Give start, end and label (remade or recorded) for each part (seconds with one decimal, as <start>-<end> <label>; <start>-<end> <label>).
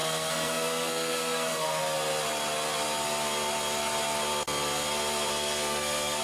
0.0-1.8 remade; 1.8-5.3 recorded; 5.3-6.2 remade